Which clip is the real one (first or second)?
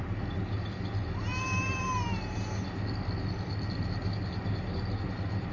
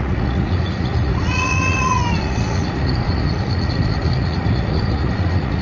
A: first